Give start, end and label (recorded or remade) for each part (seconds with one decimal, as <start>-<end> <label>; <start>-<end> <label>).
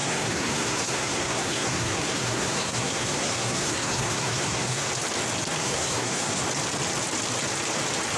0.0-4.9 remade; 4.9-5.6 recorded; 5.6-6.4 remade; 6.4-8.2 recorded